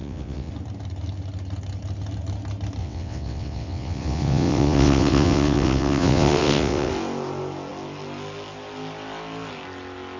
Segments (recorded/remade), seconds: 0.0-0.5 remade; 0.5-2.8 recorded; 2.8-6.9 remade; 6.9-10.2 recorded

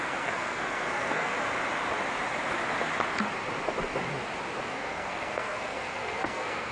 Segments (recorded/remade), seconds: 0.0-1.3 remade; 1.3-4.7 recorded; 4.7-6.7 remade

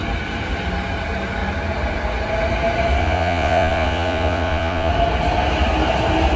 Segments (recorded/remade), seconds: 0.0-3.0 recorded; 3.0-4.9 remade; 4.9-6.4 recorded